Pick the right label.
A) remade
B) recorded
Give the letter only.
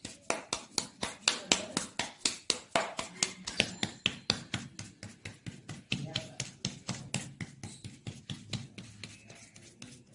B